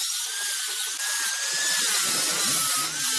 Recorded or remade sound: recorded